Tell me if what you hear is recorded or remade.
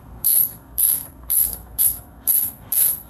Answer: remade